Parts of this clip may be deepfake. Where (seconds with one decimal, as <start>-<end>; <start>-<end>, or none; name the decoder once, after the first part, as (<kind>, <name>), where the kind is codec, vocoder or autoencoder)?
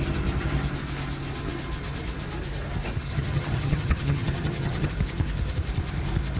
3.1-4.9 (vocoder, HiFi-GAN)